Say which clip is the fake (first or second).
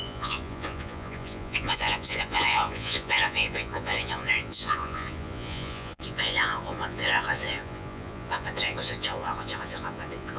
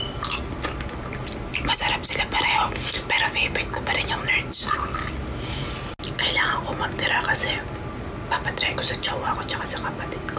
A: first